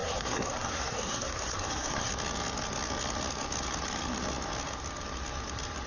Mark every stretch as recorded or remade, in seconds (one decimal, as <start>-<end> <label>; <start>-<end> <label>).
0.0-2.1 remade; 2.1-5.9 recorded